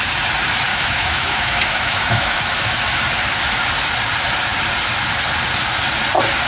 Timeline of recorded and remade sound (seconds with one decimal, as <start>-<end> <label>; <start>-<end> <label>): 0.0-0.7 recorded; 0.7-2.4 remade; 2.4-6.5 recorded